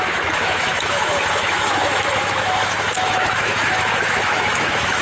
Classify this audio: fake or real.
fake